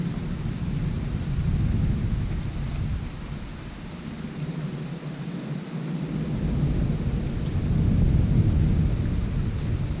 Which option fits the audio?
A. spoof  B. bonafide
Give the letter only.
B